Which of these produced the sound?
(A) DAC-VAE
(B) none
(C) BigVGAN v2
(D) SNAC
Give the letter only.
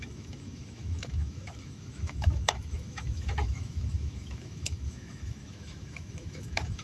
A